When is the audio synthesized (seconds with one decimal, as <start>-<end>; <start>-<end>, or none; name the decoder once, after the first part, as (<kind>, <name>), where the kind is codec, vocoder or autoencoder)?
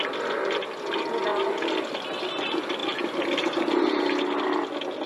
none